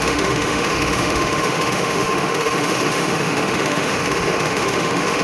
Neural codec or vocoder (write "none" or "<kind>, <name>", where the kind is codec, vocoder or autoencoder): autoencoder, DAC-VAE